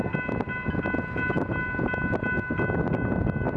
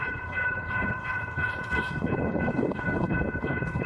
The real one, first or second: first